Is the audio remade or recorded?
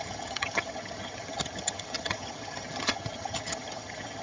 remade